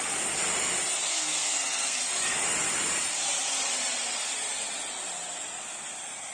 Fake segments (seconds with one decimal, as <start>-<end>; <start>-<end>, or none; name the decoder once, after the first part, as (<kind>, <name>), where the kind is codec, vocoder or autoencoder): 1.1-2.0 (codec, SNAC)